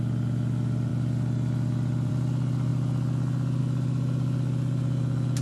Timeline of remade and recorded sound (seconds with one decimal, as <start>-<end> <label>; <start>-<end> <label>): 0.0-5.4 recorded